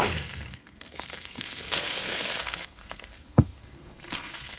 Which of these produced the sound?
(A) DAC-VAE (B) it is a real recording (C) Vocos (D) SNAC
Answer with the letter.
D